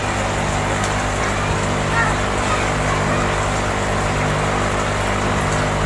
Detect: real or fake real